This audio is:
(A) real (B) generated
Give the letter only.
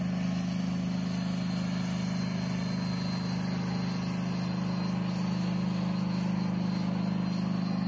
A